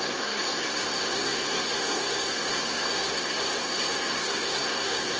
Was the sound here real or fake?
fake